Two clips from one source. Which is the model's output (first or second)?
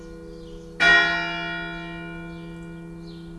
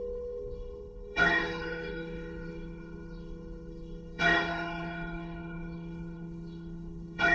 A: second